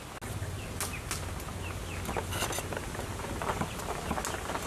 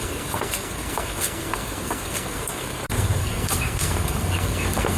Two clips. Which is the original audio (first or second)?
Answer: first